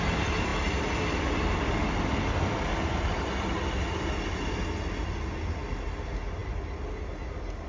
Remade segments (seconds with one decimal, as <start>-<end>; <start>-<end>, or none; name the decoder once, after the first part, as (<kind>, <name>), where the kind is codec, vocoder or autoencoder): none